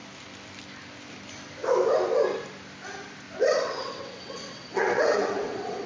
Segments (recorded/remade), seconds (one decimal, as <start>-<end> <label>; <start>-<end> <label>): 0.0-3.4 recorded; 3.4-5.9 remade